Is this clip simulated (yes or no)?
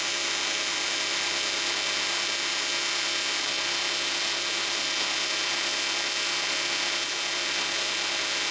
no